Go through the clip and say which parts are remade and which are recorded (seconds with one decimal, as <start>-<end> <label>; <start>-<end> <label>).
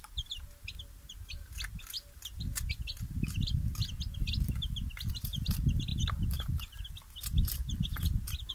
0.0-5.9 recorded; 5.9-6.9 remade; 6.9-8.5 recorded